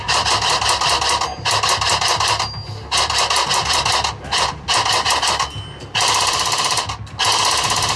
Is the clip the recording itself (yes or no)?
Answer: yes